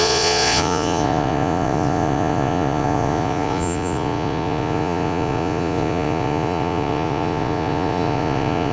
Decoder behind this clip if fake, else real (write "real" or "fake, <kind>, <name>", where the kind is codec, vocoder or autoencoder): fake, vocoder, Vocos